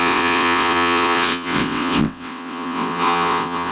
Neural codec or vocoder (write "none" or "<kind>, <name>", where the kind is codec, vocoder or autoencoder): vocoder, WaveNeXt